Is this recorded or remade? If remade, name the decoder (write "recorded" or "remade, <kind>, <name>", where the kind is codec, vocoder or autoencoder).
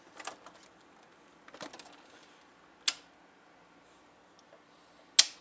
recorded